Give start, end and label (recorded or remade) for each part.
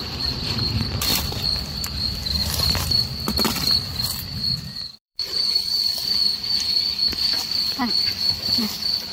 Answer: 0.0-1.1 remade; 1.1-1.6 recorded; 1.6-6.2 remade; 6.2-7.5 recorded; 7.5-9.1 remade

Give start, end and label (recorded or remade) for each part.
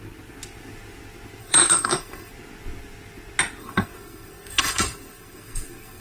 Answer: 0.0-1.4 recorded; 1.4-2.3 remade; 2.3-3.6 recorded; 3.6-6.0 remade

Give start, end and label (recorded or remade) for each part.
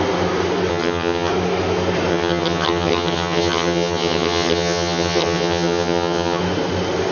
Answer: 0.0-0.7 recorded; 0.7-1.3 remade; 1.3-2.1 recorded; 2.1-6.4 remade; 6.4-7.1 recorded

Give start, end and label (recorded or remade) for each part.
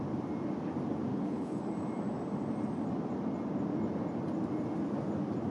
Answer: 0.0-1.1 recorded; 1.1-1.7 remade; 1.7-5.5 recorded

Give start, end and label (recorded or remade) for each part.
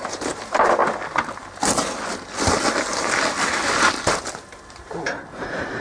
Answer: 0.0-0.8 remade; 0.8-4.3 recorded; 4.3-5.8 remade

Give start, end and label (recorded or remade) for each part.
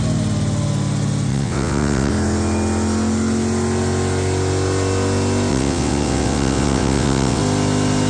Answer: 0.0-1.3 recorded; 1.3-2.1 remade; 2.1-5.5 recorded; 5.5-7.4 remade; 7.4-8.1 recorded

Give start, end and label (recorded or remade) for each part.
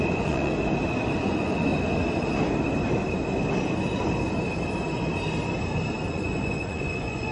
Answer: 0.0-0.5 remade; 0.5-1.2 recorded; 1.2-1.7 remade; 1.7-6.1 recorded; 6.1-7.3 remade